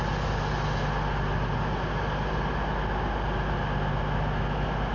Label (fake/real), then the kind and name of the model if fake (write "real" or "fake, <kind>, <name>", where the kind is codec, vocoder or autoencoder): real